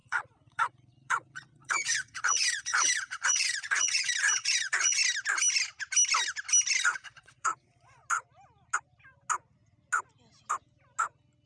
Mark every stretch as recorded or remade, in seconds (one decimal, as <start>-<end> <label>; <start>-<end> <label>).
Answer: 0.0-5.0 remade; 5.0-6.8 recorded; 6.8-8.0 remade; 8.0-11.5 recorded